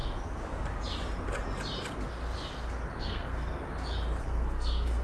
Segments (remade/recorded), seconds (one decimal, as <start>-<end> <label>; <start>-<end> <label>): 0.0-3.0 recorded; 3.0-3.6 remade; 3.6-4.2 recorded; 4.2-5.0 remade